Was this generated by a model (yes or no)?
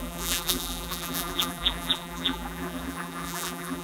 yes